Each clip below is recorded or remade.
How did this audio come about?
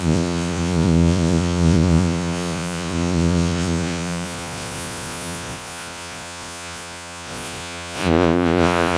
remade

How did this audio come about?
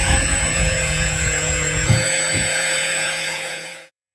remade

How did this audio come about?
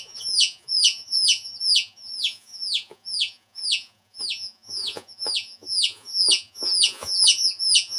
remade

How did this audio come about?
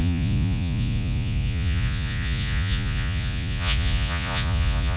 remade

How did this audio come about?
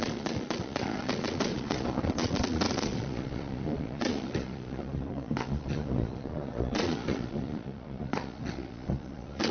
remade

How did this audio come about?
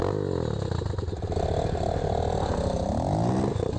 recorded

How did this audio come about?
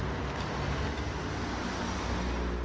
recorded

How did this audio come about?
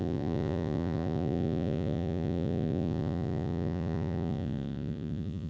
remade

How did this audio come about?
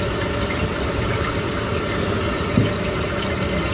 recorded